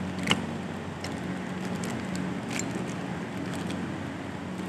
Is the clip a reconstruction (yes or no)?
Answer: no